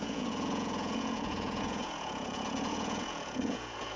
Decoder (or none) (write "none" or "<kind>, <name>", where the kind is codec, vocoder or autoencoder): vocoder, Vocos